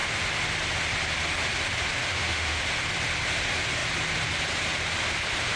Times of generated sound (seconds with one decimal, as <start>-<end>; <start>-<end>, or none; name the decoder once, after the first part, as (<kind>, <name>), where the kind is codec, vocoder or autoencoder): 2.0-2.6 (autoencoder, DAC-VAE)